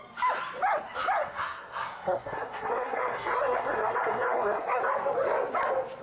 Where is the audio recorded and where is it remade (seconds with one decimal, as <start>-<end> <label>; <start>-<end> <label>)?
0.0-1.2 recorded; 1.2-4.8 remade; 4.8-6.0 recorded

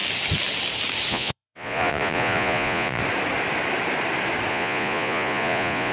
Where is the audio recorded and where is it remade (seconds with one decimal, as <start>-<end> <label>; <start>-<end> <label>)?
0.0-1.1 recorded; 1.1-3.0 remade; 3.0-4.5 recorded; 4.5-5.9 remade

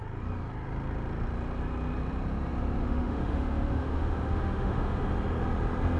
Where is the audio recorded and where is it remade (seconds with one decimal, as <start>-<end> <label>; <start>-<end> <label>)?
0.0-2.8 recorded; 2.8-5.1 remade; 5.1-6.0 recorded

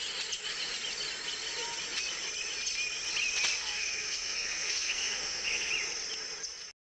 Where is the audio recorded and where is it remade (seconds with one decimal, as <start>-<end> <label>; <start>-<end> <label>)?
0.0-3.6 recorded; 3.6-5.7 remade; 5.7-6.8 recorded

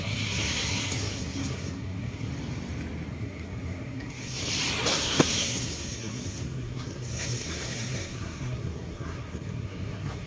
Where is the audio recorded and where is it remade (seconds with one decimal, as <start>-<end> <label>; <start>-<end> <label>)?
0.0-2.3 remade; 2.3-3.1 recorded; 3.1-4.4 remade; 4.4-5.0 recorded; 5.0-10.3 remade

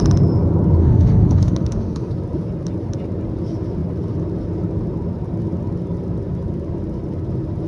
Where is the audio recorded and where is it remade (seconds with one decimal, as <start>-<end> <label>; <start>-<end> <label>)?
0.0-0.8 recorded; 0.8-2.1 remade; 2.1-7.7 recorded

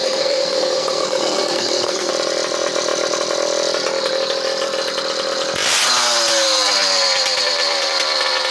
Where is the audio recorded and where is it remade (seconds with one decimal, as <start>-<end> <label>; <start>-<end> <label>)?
0.0-2.1 remade; 2.1-8.5 recorded